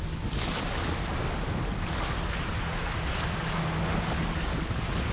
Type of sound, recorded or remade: recorded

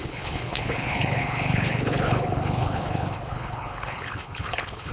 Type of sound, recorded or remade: remade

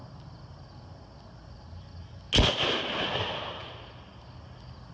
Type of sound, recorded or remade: recorded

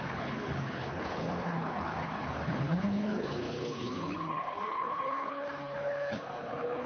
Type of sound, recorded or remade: remade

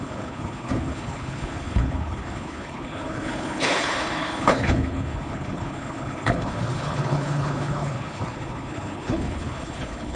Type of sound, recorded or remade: remade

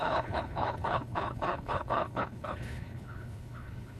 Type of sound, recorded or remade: remade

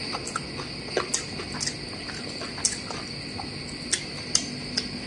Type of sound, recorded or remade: recorded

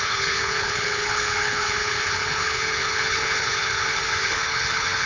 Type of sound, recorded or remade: remade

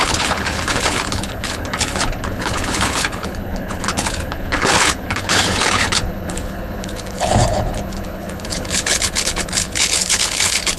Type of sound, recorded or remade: remade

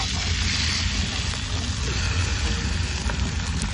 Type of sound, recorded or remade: recorded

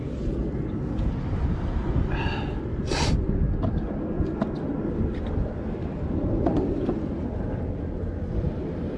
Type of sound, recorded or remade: recorded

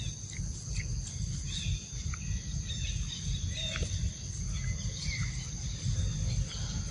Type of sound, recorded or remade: recorded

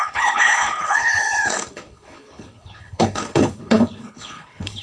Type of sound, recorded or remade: remade